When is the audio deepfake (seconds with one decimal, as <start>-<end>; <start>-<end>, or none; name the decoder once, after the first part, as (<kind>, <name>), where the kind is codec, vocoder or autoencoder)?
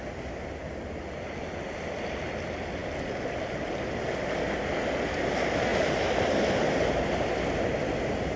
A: none